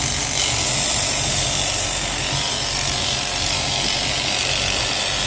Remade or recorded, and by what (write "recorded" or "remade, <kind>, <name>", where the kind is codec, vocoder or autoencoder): recorded